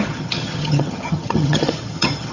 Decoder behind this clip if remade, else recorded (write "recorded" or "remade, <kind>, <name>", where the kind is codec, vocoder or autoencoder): remade, vocoder, HiFi-GAN